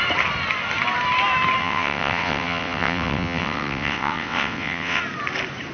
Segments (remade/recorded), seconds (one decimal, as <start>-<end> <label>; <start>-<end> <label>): 0.0-1.6 recorded; 1.6-5.0 remade; 5.0-5.7 recorded